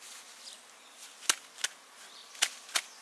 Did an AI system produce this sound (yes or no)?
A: no